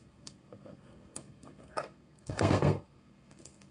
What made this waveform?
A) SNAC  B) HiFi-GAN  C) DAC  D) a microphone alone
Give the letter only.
A